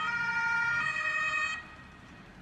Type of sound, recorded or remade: recorded